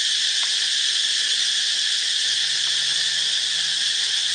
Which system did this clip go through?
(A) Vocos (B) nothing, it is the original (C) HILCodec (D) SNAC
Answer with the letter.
B